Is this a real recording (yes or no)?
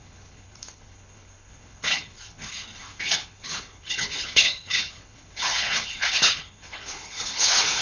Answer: no